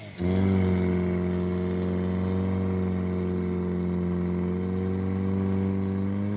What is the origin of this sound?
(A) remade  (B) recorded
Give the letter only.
B